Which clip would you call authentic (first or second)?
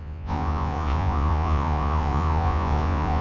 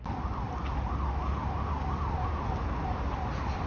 second